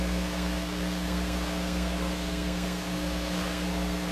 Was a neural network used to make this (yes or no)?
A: yes